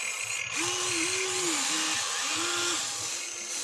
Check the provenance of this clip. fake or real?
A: real